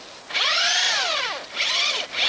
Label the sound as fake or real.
real